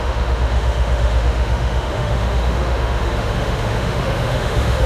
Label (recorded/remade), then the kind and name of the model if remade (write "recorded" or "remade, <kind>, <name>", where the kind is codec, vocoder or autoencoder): remade, autoencoder, DAC-VAE